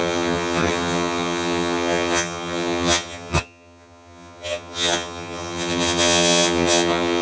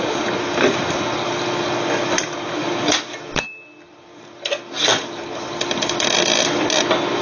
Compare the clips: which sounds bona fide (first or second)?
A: second